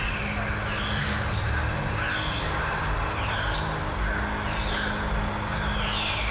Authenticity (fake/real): real